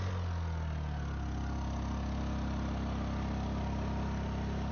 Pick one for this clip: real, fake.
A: real